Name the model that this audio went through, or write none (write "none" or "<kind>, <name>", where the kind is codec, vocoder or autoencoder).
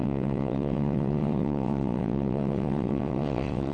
vocoder, WaveNeXt